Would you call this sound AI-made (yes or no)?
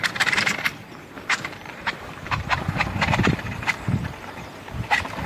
yes